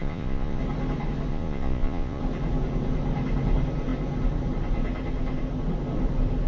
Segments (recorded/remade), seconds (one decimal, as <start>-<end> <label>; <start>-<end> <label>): 0.0-0.6 remade; 0.6-1.3 recorded; 1.3-2.2 remade; 2.2-6.5 recorded